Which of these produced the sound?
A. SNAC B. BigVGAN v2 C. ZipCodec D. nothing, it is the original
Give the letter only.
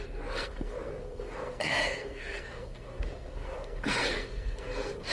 A